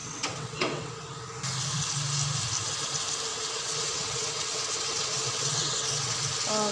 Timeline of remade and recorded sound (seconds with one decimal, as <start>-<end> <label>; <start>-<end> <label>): 0.0-0.9 remade; 0.9-3.3 recorded; 3.3-6.2 remade; 6.2-6.7 recorded